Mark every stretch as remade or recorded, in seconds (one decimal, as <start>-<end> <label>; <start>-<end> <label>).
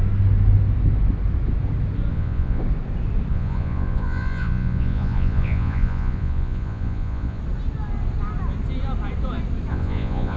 0.0-2.1 recorded; 2.1-2.6 remade; 2.6-3.3 recorded; 3.3-7.4 remade; 7.4-9.7 recorded; 9.7-10.4 remade